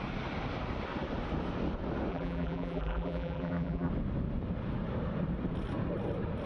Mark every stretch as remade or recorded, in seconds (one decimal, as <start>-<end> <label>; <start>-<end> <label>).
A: 0.0-2.1 recorded; 2.1-3.9 remade; 3.9-6.5 recorded